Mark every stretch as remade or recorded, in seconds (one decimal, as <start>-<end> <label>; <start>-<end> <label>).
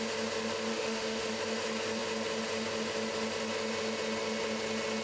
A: 0.0-0.7 recorded; 0.7-1.3 remade; 1.3-5.0 recorded